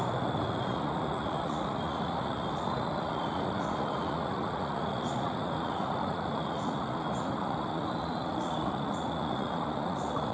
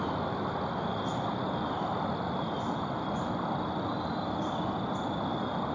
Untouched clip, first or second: second